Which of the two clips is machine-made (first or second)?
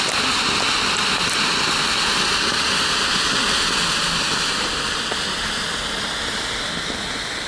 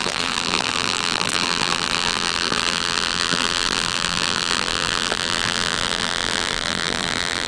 second